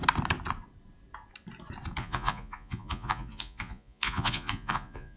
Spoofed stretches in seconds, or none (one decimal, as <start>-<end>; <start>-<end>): 2.0-5.2